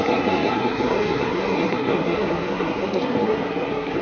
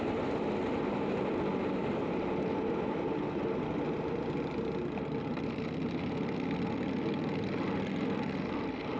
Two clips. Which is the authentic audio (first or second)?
second